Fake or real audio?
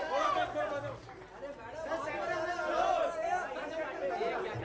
real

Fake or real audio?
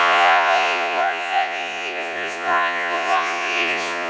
fake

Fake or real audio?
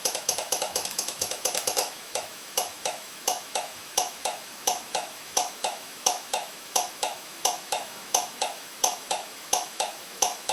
fake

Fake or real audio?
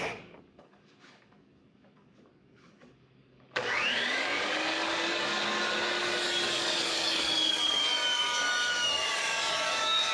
fake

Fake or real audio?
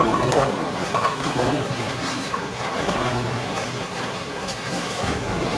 fake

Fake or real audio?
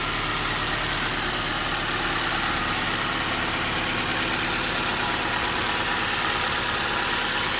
real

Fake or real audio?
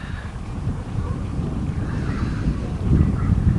fake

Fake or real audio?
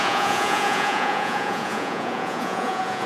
fake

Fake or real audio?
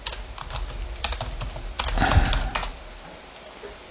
real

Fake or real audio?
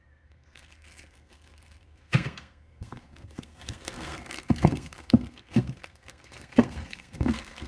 fake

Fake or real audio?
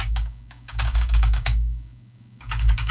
fake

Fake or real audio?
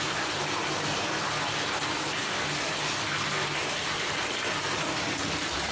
real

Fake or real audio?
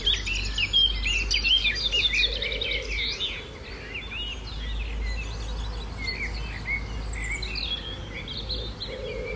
real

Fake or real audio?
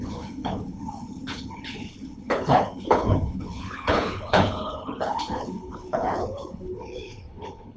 fake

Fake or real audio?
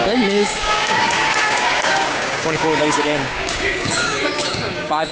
fake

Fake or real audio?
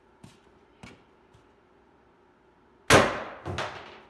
real